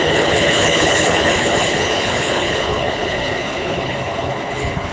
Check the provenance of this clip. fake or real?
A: fake